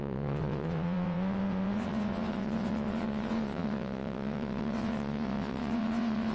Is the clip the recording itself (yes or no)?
no